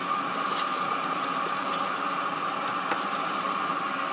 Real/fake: fake